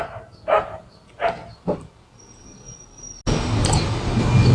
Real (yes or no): yes